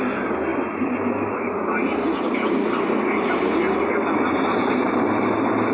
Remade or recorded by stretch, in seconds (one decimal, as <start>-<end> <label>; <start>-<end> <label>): 0.0-5.7 recorded